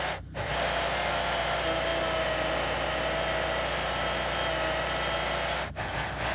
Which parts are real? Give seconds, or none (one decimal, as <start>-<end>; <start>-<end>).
0.0-6.3